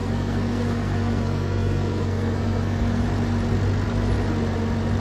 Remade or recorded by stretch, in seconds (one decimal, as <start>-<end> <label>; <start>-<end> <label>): 0.0-3.0 remade; 3.0-5.0 recorded